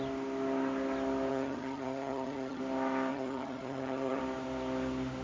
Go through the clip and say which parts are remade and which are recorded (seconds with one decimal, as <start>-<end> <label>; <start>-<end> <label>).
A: 0.0-1.3 recorded; 1.3-2.6 remade; 2.6-3.1 recorded; 3.1-4.2 remade; 4.2-5.2 recorded